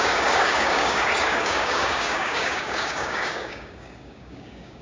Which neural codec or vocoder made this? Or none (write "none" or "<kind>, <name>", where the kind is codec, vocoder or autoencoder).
codec, DAC